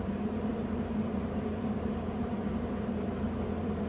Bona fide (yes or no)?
no